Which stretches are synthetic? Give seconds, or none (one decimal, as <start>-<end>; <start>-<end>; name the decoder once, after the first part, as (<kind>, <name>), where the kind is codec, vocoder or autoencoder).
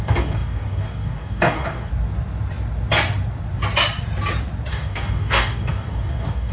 0.0-1.9 (codec, DAC); 4.7-6.5